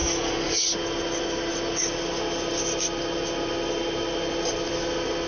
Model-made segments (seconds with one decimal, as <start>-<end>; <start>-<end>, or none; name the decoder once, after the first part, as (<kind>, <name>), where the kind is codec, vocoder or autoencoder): 0.0-0.6 (codec, DAC)